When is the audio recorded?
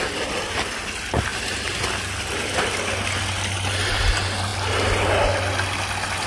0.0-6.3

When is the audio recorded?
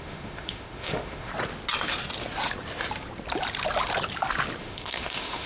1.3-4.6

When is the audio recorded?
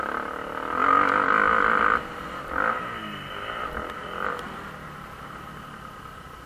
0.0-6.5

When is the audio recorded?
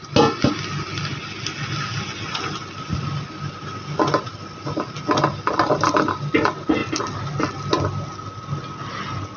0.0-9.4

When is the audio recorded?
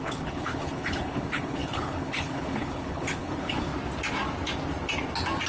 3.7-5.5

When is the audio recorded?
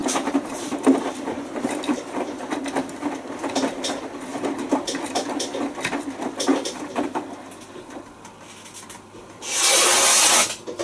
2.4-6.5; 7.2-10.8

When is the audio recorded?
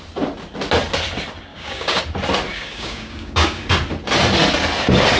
0.0-1.5; 2.0-2.5; 3.6-5.2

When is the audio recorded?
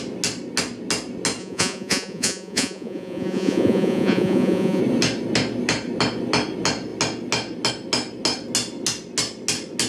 0.0-1.4; 4.8-9.9